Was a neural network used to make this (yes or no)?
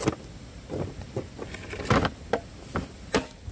no